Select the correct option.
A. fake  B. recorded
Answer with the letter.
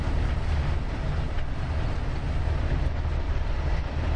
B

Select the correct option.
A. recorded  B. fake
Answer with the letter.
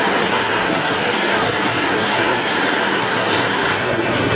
B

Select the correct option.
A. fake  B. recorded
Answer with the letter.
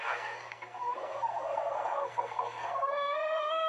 A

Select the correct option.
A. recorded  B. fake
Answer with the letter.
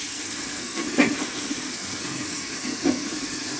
B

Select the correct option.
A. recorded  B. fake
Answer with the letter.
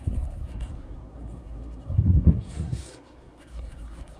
B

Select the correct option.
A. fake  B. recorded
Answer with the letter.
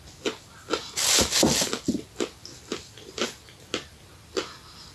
B